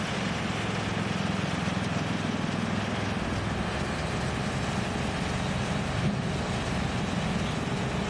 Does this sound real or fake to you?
real